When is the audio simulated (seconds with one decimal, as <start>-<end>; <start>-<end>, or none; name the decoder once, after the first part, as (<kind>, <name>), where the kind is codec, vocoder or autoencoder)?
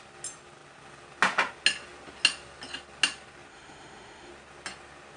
3.5-4.3 (autoencoder, DAC-VAE)